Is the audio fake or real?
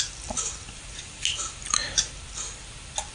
real